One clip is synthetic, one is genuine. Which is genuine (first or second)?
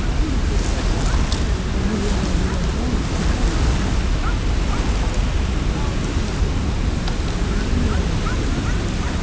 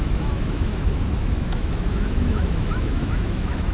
first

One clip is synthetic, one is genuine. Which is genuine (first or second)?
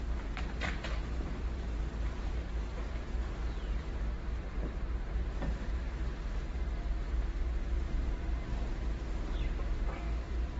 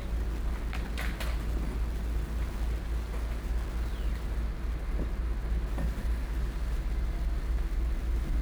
second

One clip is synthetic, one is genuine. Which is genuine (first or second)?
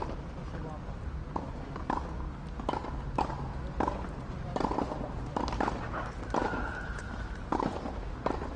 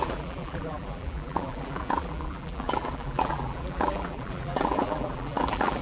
first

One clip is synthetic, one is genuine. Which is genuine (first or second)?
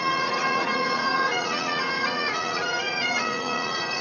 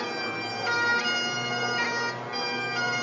second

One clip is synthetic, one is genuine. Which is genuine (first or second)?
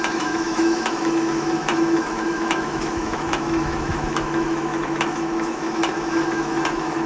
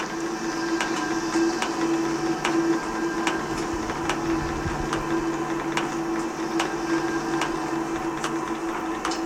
second